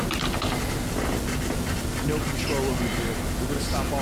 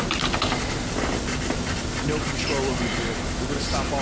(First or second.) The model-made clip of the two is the second